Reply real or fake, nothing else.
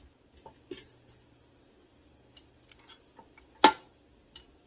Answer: real